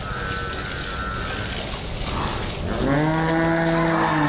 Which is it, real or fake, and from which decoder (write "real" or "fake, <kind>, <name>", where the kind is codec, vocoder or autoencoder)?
real